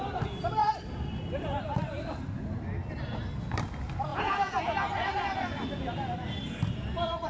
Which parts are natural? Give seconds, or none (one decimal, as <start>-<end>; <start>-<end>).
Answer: 0.0-4.1; 4.6-7.3